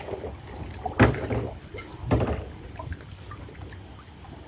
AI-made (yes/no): no